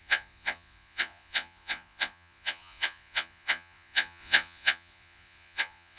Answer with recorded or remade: remade